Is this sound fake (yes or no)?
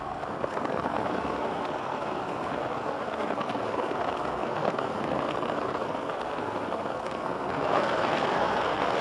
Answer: yes